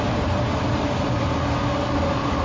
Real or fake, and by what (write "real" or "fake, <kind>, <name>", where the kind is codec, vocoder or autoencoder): real